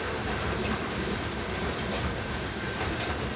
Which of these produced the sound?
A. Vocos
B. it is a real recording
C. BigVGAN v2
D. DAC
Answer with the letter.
C